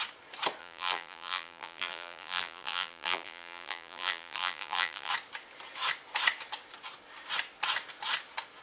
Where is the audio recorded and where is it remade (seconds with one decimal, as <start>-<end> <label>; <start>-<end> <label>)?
0.0-0.6 recorded; 0.6-5.1 remade; 5.1-8.6 recorded

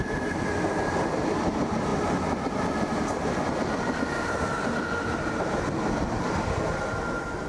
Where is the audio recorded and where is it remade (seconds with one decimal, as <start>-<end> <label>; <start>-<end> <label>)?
0.0-7.5 recorded

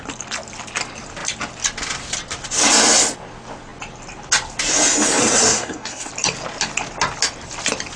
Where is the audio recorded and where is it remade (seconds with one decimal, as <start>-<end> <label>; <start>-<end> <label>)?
0.0-5.2 recorded; 5.2-6.1 remade; 6.1-8.0 recorded

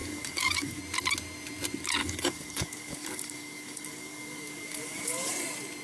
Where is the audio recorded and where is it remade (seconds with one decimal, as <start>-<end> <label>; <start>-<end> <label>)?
0.0-0.8 remade; 0.8-2.0 recorded; 2.0-5.3 remade; 5.3-5.8 recorded

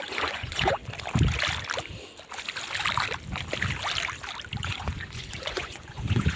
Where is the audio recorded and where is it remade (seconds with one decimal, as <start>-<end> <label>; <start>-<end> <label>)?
0.0-0.8 remade; 0.8-4.6 recorded; 4.6-6.4 remade

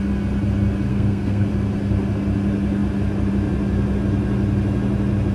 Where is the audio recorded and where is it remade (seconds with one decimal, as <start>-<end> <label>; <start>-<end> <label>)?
0.0-0.9 recorded; 0.9-1.5 remade; 1.5-5.3 recorded